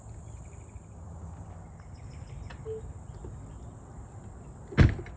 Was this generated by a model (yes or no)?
no